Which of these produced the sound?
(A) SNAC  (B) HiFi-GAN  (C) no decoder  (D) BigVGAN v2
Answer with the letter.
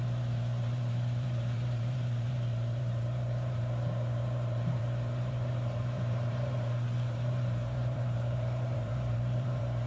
D